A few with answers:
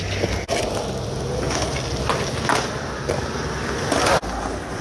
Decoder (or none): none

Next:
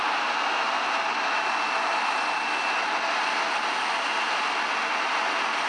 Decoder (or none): none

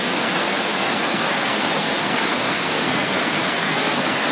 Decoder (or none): codec, SNAC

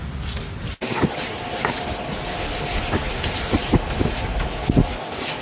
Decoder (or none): none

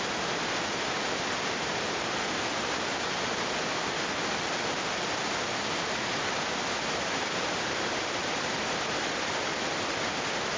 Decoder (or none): vocoder, BigVGAN v2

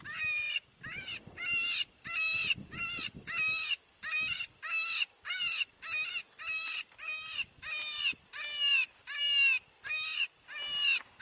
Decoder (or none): none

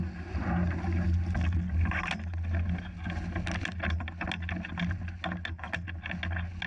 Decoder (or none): none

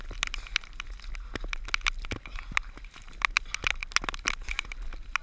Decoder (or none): none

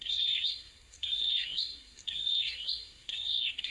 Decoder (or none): codec, SNAC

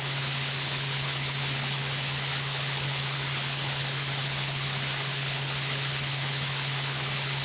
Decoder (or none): codec, HILCodec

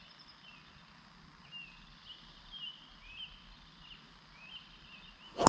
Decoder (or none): none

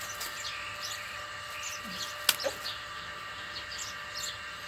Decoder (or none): none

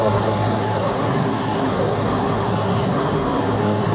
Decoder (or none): codec, SNAC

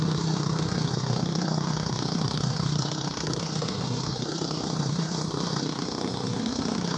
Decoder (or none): codec, SNAC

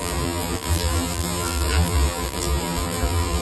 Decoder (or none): vocoder, BigVGAN v2